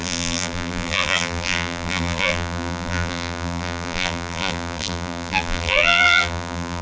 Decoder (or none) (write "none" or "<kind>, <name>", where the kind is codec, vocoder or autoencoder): vocoder, BigVGAN v2